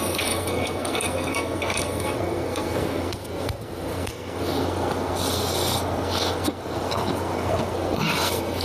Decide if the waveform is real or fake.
fake